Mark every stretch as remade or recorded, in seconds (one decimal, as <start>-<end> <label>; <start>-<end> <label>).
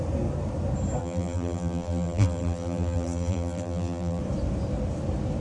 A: 0.0-1.0 recorded; 1.0-4.2 remade; 4.2-5.4 recorded